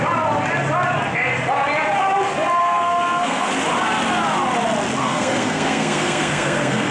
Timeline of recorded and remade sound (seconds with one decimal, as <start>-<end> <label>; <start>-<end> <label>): 0.0-2.6 recorded; 2.6-3.5 remade; 3.5-5.0 recorded; 5.0-6.9 remade